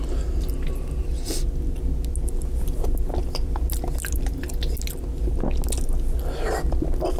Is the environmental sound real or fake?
real